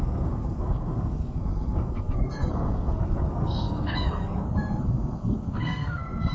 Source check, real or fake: fake